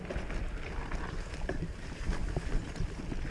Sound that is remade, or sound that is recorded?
recorded